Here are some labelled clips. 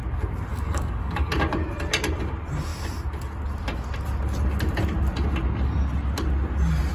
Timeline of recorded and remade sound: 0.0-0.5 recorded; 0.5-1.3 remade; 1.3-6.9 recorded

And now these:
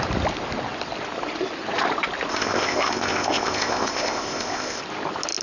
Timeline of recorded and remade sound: 0.0-2.3 recorded; 2.3-4.8 remade; 4.8-5.4 recorded